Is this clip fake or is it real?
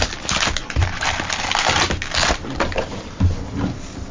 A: real